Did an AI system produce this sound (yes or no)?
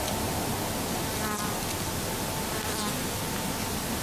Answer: no